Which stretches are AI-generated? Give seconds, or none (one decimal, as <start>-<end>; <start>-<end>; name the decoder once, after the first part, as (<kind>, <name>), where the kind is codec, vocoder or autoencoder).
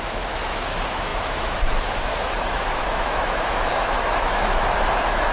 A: 0.0-5.3 (autoencoder, DAC-VAE)